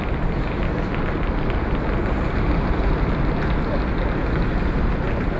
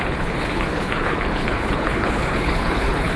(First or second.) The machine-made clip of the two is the second